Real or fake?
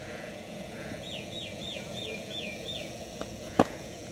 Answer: fake